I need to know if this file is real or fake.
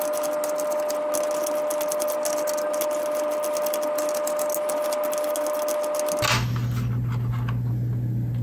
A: real